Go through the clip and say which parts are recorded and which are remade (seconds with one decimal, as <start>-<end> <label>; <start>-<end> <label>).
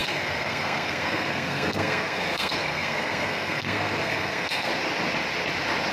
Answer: 0.0-4.7 remade; 4.7-5.9 recorded